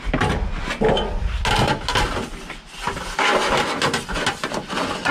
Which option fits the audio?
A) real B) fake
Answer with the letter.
A